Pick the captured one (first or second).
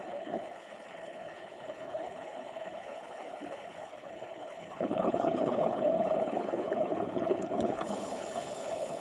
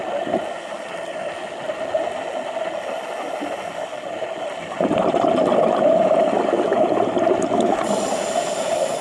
second